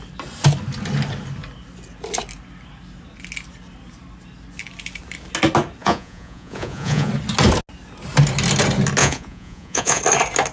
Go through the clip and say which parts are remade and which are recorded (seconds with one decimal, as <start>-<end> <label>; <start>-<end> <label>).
0.0-5.8 recorded; 5.8-7.1 remade; 7.1-9.0 recorded; 9.0-10.0 remade; 10.0-10.5 recorded